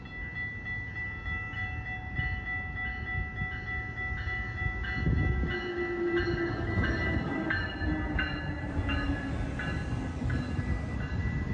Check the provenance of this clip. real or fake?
real